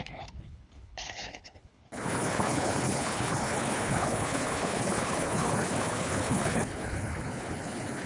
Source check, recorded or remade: remade